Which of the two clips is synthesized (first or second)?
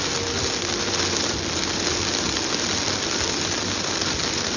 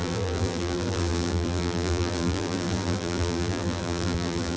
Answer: second